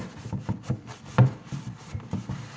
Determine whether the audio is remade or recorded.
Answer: recorded